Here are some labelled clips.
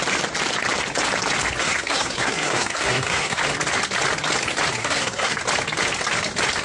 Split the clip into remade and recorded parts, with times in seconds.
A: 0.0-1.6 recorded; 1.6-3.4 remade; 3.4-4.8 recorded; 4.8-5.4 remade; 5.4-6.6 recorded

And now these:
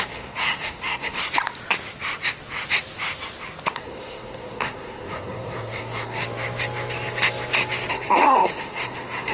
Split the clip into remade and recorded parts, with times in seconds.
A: 0.0-1.2 remade; 1.2-3.7 recorded; 3.7-6.2 remade; 6.2-7.9 recorded; 7.9-9.3 remade

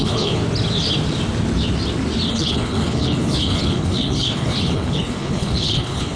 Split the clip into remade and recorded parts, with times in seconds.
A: 0.0-0.4 remade; 0.4-2.3 recorded; 2.3-6.2 remade

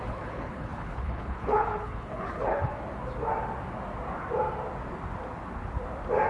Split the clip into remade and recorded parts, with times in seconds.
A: 0.0-2.7 remade; 2.7-6.3 recorded

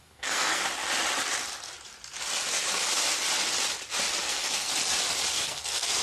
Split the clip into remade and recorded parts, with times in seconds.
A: 0.0-0.6 remade; 0.6-4.2 recorded; 4.2-4.7 remade; 4.7-5.3 recorded; 5.3-6.0 remade

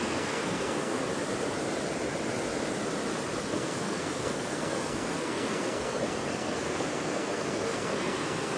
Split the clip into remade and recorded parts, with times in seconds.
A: 0.0-1.1 remade; 1.1-3.4 recorded; 3.4-8.6 remade